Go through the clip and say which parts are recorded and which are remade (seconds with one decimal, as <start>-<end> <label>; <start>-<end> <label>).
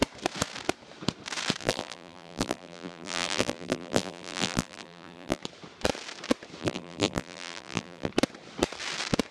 0.0-1.6 recorded; 1.6-5.4 remade; 5.4-6.6 recorded; 6.6-8.1 remade; 8.1-9.3 recorded